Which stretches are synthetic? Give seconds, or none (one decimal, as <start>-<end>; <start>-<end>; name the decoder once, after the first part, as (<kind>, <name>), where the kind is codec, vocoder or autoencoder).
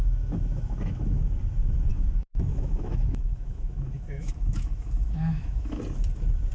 0.0-1.3 (autoencoder, DAC-VAE); 1.9-5.8